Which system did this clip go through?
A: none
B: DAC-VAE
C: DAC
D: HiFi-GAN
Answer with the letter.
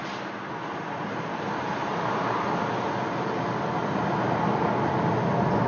A